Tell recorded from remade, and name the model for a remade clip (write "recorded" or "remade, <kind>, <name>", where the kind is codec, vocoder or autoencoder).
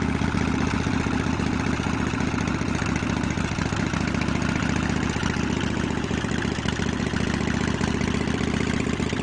recorded